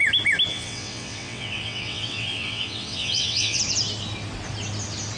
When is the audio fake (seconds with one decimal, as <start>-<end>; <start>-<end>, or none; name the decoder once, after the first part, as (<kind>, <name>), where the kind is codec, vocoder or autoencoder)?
0.5-3.6 (vocoder, WaveNeXt)